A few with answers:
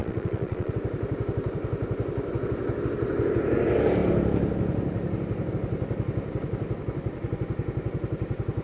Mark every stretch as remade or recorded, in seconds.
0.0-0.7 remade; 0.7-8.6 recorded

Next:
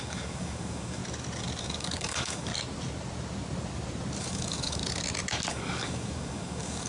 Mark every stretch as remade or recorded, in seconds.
0.0-1.0 remade; 1.0-1.6 recorded; 1.6-2.5 remade; 2.5-4.2 recorded; 4.2-4.8 remade; 4.8-5.5 recorded; 5.5-6.9 remade